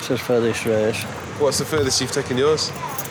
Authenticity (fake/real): real